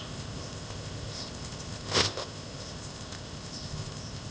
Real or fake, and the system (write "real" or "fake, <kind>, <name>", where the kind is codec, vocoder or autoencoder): fake, codec, ZipCodec